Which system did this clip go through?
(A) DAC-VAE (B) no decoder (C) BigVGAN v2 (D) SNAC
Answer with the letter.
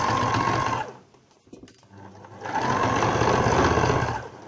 B